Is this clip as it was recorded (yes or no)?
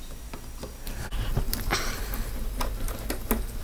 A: yes